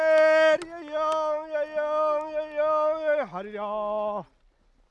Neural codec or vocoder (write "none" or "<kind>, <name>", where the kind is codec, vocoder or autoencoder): none